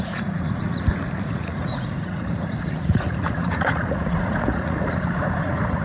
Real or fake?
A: fake